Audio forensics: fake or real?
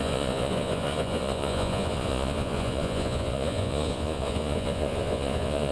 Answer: fake